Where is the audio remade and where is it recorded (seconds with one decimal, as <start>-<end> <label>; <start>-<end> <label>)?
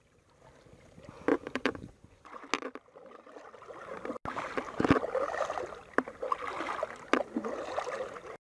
0.0-1.3 recorded; 1.3-2.4 remade; 2.4-8.5 recorded